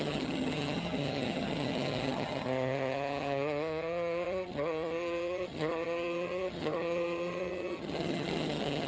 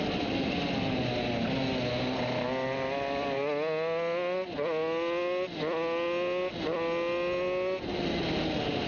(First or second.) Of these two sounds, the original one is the second